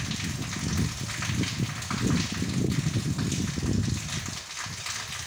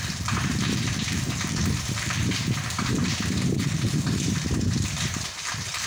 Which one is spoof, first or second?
second